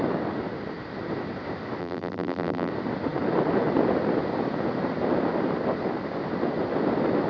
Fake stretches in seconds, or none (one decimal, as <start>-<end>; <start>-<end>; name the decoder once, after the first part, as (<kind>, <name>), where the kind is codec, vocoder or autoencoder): 1.8-2.7 (vocoder, BigVGAN v2)